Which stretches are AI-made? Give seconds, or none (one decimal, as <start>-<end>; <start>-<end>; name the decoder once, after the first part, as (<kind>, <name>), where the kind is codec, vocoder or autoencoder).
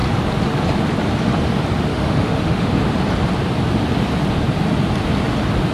1.9-2.7 (autoencoder, DAC-VAE)